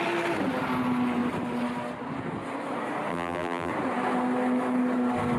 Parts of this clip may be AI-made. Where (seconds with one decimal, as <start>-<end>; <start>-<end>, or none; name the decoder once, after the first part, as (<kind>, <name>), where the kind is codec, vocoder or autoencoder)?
3.1-3.7 (vocoder, BigVGAN v2)